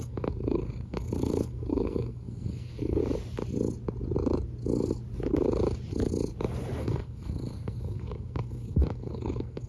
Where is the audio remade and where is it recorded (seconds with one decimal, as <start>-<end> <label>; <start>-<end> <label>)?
0.0-3.0 remade; 3.0-6.8 recorded; 6.8-9.7 remade